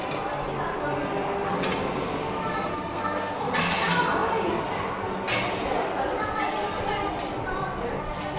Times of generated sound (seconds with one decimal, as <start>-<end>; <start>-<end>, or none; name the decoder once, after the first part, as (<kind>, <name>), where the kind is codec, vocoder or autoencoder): 2.7-3.5 (codec, SNAC)